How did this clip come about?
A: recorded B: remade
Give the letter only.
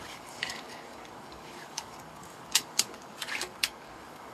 B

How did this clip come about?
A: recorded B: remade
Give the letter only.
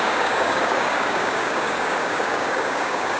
B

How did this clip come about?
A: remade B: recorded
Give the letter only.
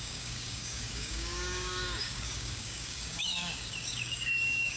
A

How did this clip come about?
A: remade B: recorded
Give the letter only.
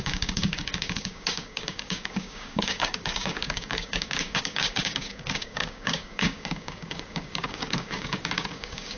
A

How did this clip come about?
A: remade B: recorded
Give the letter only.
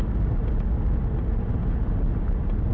B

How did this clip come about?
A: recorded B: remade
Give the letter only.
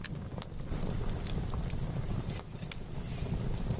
A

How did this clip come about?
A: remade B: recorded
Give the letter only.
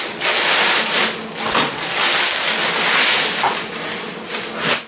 B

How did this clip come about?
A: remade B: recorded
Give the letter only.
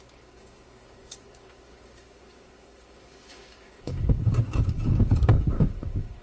A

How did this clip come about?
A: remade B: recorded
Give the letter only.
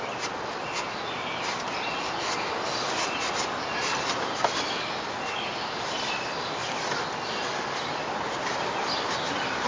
B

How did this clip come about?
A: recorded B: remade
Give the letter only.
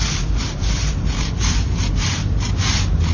A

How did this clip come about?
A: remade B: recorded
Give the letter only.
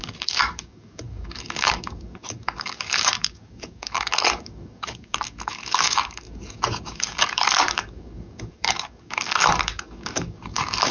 A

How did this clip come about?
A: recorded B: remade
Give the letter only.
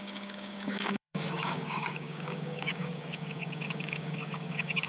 B